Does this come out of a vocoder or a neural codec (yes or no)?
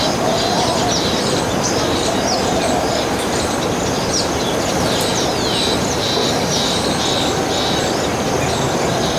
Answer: no